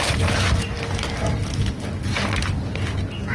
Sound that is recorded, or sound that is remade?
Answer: recorded